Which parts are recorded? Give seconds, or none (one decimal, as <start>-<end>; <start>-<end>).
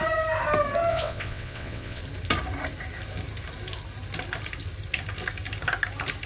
0.0-0.9; 2.0-6.3